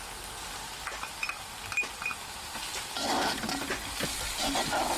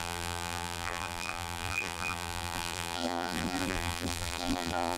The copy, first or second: second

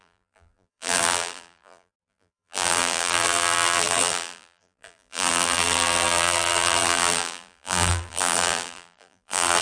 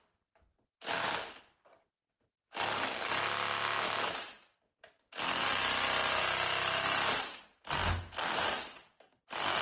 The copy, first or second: first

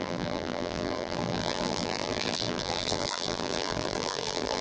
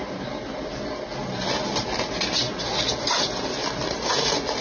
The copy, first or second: first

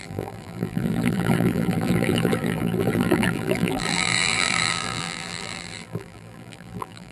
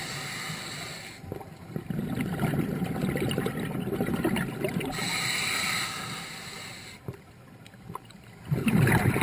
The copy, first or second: first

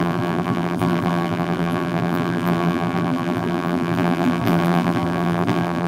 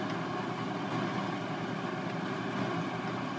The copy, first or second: first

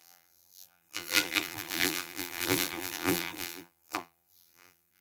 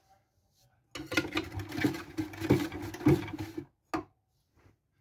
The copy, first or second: first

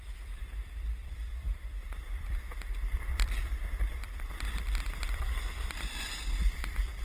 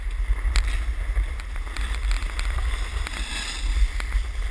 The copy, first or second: first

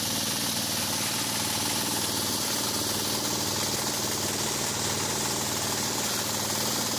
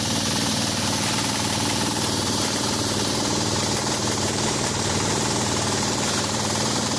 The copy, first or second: second